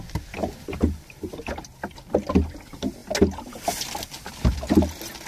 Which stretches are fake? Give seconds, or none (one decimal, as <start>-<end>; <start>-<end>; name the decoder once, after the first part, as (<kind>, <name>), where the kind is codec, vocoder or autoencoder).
none